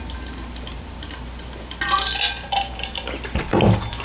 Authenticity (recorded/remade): recorded